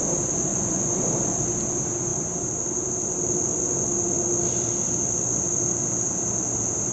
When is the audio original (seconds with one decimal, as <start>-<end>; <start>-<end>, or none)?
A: 0.0-0.5; 1.1-6.9